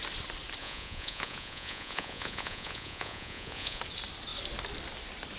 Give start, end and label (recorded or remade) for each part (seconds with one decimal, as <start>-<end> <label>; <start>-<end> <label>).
0.0-0.6 recorded; 0.6-3.8 remade; 3.8-5.4 recorded